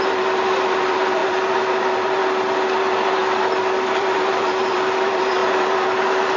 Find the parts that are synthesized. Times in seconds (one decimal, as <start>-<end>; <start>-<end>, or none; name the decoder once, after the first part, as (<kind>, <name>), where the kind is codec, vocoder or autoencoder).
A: 0.0-2.2 (vocoder, BigVGAN v2); 2.8-3.2; 4.0-6.4

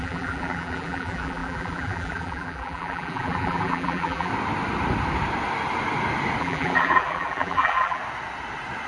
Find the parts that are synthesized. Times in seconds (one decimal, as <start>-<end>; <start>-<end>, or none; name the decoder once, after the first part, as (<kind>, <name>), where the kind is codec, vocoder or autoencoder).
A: 0.0-4.3 (vocoder, BigVGAN v2); 6.4-8.0

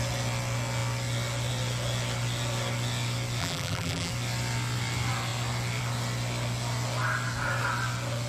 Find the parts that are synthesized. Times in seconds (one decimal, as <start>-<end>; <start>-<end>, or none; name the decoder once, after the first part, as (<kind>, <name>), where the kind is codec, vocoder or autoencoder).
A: 3.4-4.1 (vocoder, BigVGAN v2)

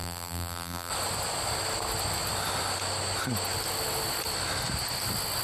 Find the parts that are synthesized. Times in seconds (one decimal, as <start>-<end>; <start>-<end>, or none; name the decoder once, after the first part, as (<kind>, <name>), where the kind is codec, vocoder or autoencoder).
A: 0.0-0.9 (vocoder, BigVGAN v2)

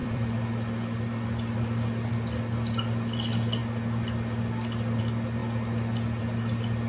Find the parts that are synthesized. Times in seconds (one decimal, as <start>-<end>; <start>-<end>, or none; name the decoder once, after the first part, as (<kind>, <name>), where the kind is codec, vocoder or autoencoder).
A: 0.0-2.1 (vocoder, BigVGAN v2)

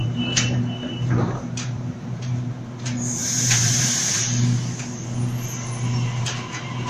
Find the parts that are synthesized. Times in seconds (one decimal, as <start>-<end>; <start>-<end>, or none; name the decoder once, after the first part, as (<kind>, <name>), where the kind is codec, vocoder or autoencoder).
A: 0.0-2.6 (vocoder, BigVGAN v2); 3.2-4.2